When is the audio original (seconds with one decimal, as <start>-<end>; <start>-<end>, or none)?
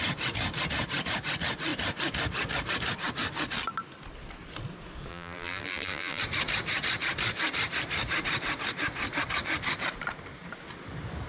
0.0-5.1; 6.2-11.3